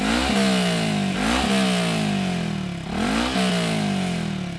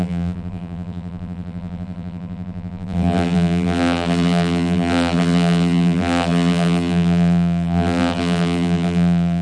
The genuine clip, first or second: first